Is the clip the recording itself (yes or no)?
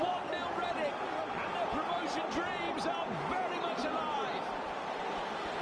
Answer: yes